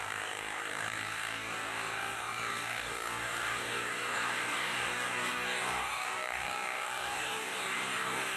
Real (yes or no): no